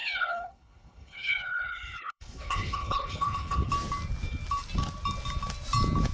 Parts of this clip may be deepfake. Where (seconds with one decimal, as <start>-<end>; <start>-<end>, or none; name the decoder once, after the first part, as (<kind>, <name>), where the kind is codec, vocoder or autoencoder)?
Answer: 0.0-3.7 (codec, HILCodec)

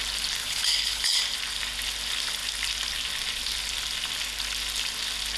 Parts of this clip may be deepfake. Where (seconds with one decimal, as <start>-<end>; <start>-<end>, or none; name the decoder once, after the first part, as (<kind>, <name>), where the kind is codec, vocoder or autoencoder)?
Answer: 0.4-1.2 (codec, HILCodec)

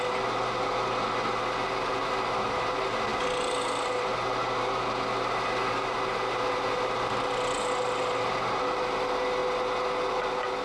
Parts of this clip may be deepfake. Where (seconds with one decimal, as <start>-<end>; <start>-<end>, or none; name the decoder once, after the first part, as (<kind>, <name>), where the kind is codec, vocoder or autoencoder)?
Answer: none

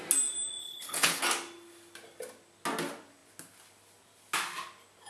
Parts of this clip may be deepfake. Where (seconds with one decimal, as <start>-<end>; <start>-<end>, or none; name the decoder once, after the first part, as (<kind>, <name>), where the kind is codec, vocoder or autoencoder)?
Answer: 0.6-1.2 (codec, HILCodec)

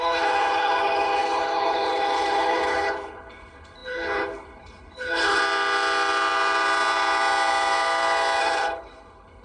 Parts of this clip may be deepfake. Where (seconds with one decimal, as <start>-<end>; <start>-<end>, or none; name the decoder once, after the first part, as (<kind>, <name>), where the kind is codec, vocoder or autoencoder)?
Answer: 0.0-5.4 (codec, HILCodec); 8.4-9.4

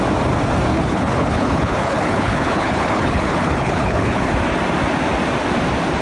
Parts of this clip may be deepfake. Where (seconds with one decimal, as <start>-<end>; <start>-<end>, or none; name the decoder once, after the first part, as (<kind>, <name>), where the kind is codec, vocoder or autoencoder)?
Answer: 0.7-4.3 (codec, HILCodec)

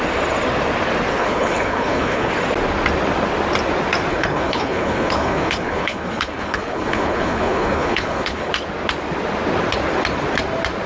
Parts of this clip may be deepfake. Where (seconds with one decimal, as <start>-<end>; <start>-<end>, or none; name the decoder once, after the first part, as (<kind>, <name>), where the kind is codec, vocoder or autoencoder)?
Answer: 1.1-2.3 (codec, HILCodec); 4.1-8.5